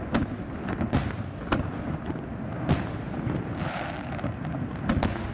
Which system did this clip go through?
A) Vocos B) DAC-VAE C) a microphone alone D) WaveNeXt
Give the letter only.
C